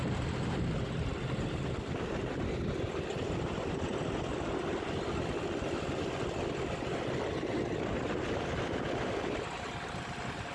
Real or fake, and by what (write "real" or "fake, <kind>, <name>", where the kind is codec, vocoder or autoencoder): real